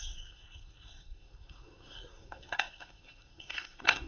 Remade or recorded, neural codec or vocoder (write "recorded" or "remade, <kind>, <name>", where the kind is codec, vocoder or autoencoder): remade, codec, SNAC